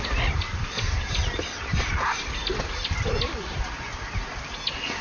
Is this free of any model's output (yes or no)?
no